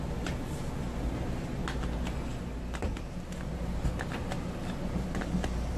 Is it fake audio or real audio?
real